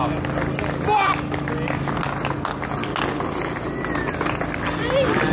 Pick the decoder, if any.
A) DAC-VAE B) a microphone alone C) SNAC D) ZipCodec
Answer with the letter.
B